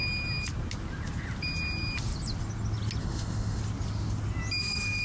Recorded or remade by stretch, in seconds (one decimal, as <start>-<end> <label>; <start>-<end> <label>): 0.0-3.0 recorded; 3.0-3.6 remade; 3.6-4.6 recorded; 4.6-5.0 remade